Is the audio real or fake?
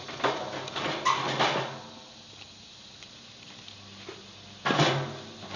real